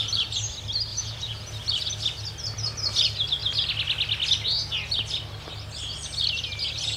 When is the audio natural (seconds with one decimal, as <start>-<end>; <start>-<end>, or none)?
0.0-0.9; 1.5-7.0